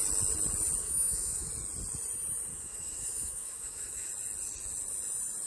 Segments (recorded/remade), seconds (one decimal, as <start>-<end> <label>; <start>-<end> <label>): 0.0-0.8 recorded; 0.8-1.5 remade; 1.5-2.5 recorded; 2.5-4.1 remade; 4.1-5.5 recorded